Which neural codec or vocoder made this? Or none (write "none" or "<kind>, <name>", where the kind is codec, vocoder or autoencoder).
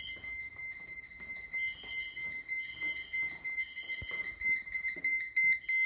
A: none